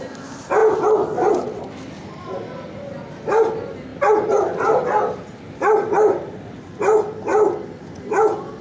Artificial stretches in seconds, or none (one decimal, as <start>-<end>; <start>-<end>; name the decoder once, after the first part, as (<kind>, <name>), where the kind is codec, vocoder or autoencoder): none